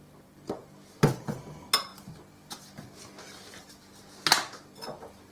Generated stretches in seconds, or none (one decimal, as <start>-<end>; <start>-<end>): none